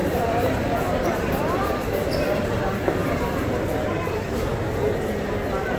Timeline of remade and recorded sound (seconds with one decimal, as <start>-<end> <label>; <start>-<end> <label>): 0.0-3.5 remade; 3.5-5.8 recorded